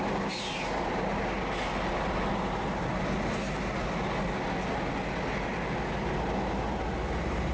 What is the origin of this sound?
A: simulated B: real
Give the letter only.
B